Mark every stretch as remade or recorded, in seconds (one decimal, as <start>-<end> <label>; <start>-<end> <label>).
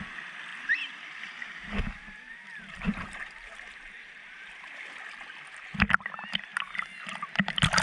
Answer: 0.0-0.5 recorded; 0.5-4.5 remade; 4.5-7.8 recorded